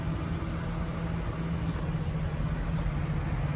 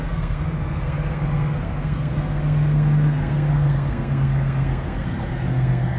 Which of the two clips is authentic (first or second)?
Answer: first